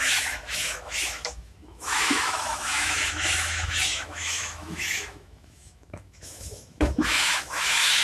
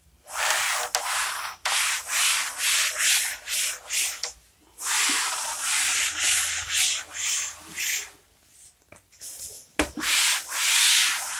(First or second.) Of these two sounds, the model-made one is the first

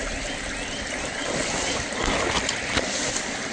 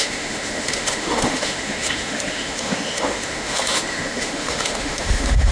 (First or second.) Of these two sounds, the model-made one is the second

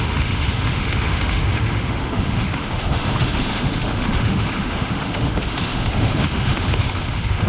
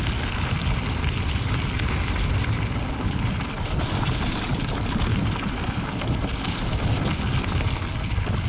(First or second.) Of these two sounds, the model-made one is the first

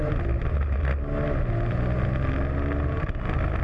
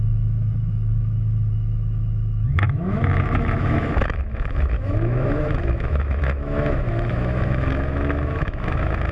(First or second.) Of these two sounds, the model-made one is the second